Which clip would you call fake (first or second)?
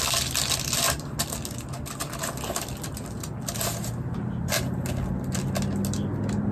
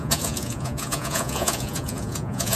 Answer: second